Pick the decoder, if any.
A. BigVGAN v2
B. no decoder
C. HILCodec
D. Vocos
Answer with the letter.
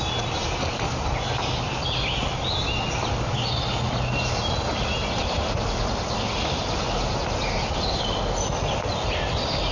B